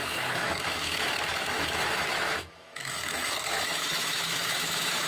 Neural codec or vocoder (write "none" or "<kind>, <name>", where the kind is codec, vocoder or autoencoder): autoencoder, DAC-VAE